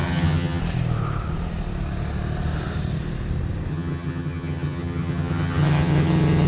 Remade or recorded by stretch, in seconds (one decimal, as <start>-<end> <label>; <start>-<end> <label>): 0.0-0.6 remade; 0.6-3.7 recorded; 3.7-6.5 remade